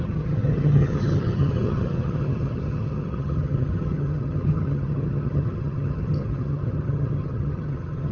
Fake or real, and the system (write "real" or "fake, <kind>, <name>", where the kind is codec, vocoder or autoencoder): fake, vocoder, HiFi-GAN